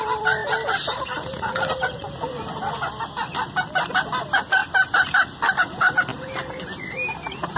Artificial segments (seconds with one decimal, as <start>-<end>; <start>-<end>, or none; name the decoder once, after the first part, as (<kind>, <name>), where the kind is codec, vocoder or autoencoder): 0.4-1.5 (vocoder, BigVGAN v2); 6.1-7.1